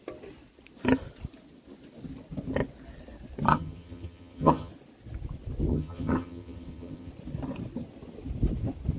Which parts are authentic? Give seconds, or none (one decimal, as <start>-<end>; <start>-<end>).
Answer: 0.0-3.5; 4.7-5.7; 7.1-9.0